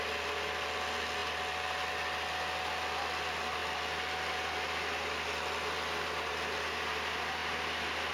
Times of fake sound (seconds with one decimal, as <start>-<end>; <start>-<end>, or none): none